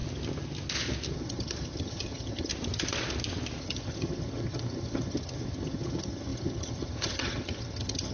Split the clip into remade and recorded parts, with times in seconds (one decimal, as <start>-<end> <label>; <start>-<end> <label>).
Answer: 0.0-1.1 recorded; 1.1-2.5 remade; 2.5-3.6 recorded; 3.6-8.1 remade